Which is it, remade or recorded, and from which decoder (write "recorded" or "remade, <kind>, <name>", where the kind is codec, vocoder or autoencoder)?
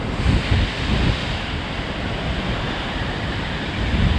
recorded